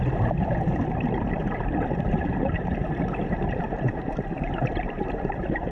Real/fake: fake